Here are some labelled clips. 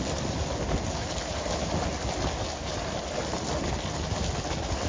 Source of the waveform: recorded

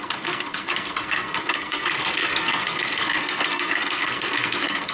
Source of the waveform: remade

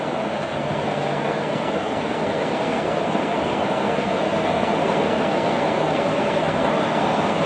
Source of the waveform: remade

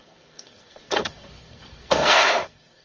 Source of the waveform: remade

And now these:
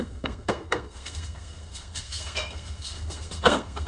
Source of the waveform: remade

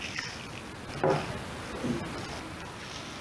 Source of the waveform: recorded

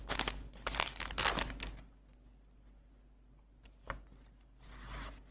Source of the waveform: recorded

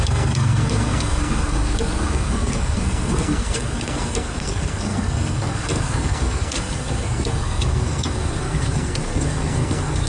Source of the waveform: remade